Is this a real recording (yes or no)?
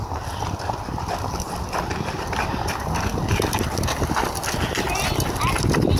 yes